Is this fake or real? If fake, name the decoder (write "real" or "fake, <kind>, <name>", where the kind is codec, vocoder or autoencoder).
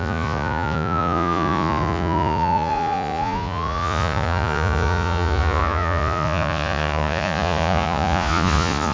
fake, vocoder, Vocos